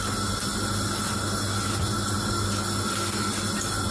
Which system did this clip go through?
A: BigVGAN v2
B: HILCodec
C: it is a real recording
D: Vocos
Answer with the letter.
C